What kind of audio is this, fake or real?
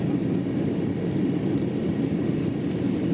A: real